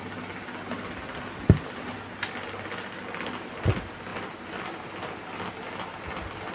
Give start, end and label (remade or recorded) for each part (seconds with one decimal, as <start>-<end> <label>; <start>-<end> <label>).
0.0-6.5 recorded